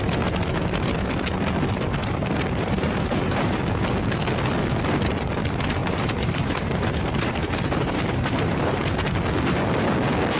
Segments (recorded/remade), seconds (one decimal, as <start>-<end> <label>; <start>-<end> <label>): 0.0-2.0 recorded; 2.0-3.6 remade; 3.6-5.8 recorded; 5.8-8.9 remade; 8.9-10.4 recorded